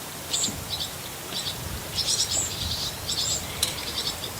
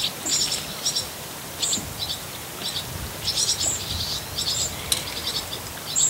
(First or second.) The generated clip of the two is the first